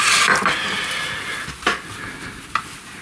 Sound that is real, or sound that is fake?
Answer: real